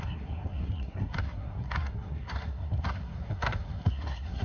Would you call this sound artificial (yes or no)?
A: yes